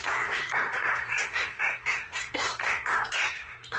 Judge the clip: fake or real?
fake